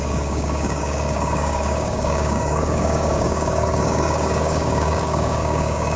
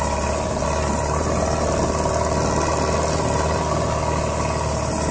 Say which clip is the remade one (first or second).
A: first